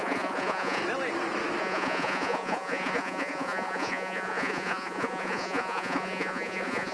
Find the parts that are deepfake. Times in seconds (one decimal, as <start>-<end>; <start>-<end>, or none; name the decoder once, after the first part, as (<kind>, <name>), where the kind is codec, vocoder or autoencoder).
0.0-0.8 (vocoder, Vocos); 1.6-6.9